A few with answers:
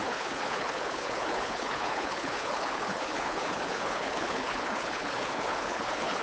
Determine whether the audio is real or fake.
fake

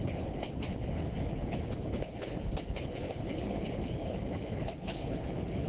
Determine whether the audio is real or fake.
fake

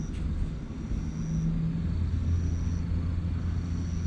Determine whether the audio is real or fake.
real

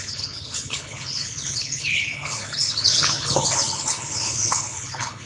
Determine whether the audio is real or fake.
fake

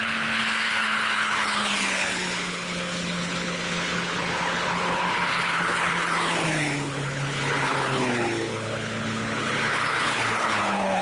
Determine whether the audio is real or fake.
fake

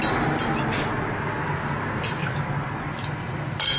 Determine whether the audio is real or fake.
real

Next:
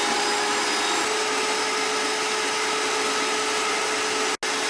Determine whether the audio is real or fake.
real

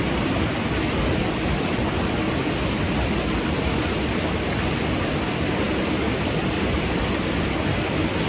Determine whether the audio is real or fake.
real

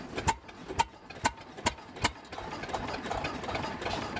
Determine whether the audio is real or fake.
real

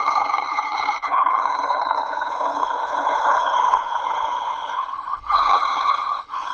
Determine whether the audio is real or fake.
fake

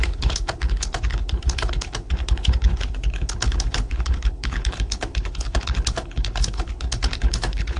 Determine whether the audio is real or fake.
fake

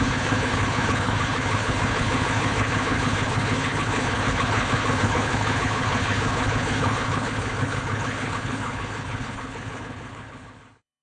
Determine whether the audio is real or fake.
fake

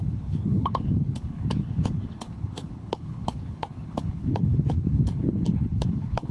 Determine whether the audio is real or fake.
fake